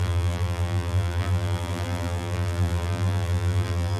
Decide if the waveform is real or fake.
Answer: fake